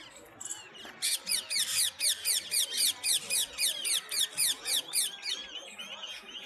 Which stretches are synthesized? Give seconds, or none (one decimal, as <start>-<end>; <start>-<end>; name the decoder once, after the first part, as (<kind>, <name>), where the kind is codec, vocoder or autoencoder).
4.4-4.9 (vocoder, Vocos); 5.4-6.5